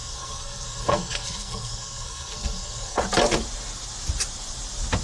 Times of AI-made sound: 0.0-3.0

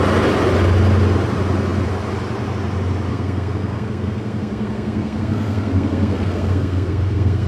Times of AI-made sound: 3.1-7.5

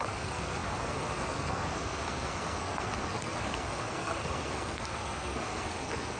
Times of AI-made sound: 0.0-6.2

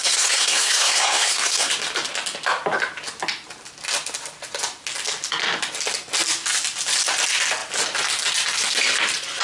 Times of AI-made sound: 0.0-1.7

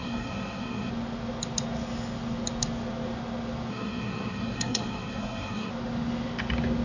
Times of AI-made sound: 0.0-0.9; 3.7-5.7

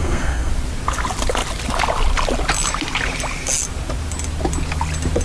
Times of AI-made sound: 0.0-0.5